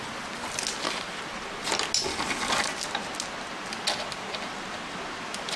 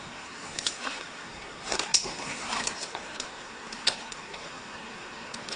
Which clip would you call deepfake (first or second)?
second